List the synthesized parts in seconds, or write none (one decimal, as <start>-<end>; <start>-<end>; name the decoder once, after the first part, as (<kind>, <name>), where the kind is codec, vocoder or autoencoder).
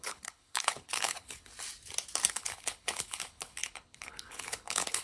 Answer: 0.0-1.5 (codec, HILCodec); 2.3-5.0